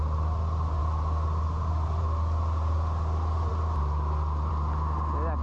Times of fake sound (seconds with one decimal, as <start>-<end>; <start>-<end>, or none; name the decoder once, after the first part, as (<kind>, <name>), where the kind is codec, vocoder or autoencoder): none